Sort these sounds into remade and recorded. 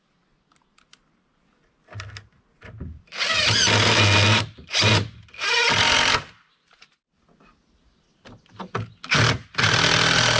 recorded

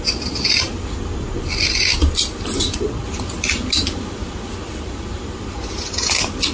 recorded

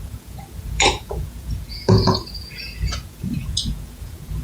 remade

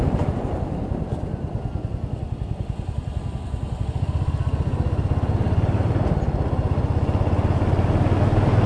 recorded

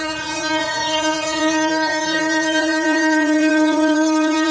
remade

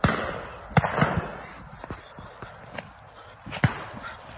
recorded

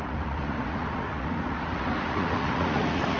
remade